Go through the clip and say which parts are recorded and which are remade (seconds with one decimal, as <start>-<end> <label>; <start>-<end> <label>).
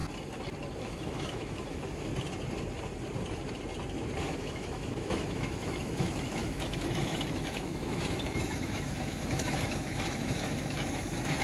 0.0-0.8 recorded; 0.8-2.1 remade; 2.1-4.2 recorded; 4.2-11.4 remade